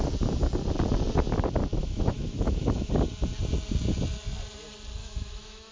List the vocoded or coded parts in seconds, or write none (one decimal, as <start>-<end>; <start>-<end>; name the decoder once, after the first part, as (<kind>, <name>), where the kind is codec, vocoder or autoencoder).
1.8-2.9 (autoencoder, DAC-VAE); 5.0-5.7

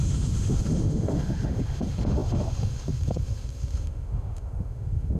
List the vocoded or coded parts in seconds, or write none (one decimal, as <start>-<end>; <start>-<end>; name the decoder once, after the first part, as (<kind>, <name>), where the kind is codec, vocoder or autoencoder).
0.0-5.2 (autoencoder, DAC-VAE)

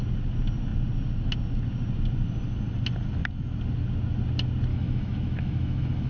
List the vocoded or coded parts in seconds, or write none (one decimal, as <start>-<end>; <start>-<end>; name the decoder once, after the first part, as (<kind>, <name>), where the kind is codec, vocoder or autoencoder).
4.7-6.1 (autoencoder, DAC-VAE)

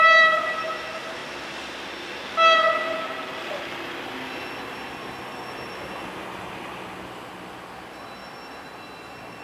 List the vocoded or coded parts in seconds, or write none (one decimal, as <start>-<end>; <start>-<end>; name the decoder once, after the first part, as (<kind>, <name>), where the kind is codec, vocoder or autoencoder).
none

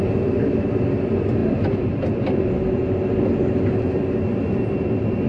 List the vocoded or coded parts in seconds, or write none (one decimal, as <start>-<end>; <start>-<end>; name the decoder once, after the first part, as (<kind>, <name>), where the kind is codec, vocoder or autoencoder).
none